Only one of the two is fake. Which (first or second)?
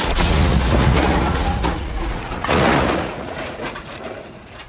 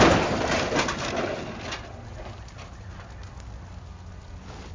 first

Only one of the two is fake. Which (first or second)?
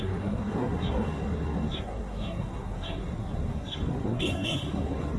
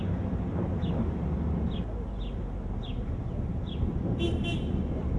first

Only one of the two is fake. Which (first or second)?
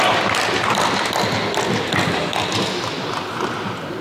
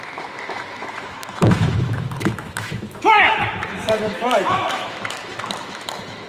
second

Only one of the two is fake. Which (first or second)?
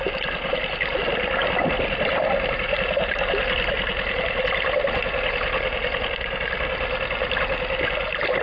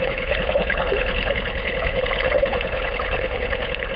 second